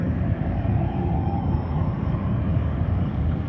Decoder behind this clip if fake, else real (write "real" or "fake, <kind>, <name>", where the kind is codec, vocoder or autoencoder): fake, codec, DAC